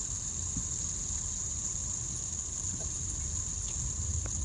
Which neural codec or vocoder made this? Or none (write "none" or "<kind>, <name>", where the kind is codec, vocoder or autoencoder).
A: none